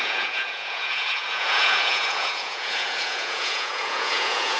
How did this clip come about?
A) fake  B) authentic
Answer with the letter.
A